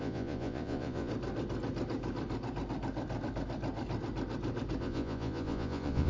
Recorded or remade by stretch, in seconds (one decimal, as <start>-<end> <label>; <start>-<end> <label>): 0.0-1.1 remade; 1.1-4.8 recorded; 4.8-6.1 remade